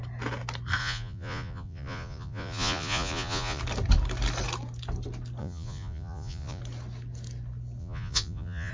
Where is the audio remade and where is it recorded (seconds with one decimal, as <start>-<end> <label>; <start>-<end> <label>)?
0.0-0.8 recorded; 0.8-3.6 remade; 3.6-5.4 recorded; 5.4-6.6 remade; 6.6-7.8 recorded; 7.8-8.7 remade